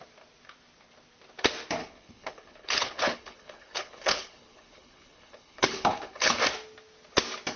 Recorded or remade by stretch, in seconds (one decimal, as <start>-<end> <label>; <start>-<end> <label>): 0.0-1.8 recorded; 1.8-6.4 remade; 6.4-7.6 recorded